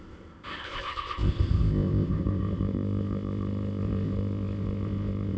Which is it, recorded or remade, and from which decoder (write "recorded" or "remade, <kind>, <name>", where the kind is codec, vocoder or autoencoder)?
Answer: remade, codec, ZipCodec